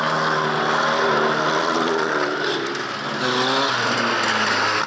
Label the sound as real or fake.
real